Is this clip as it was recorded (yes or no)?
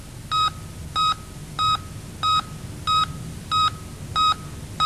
yes